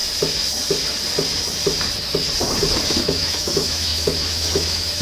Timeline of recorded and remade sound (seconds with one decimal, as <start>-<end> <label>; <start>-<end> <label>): 0.0-3.0 recorded; 3.0-5.0 remade